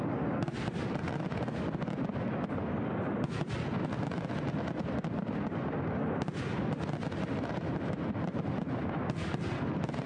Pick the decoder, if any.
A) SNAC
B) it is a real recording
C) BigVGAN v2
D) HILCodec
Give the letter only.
B